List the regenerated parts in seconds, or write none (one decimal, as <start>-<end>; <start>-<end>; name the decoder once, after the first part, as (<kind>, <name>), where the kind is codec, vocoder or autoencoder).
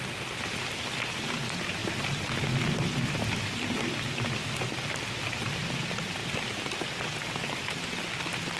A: none